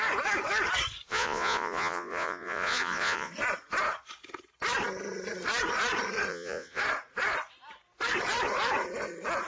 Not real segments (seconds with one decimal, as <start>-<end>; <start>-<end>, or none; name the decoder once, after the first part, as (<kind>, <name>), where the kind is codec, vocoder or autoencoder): 1.1-3.3 (vocoder, Vocos); 6.3-6.8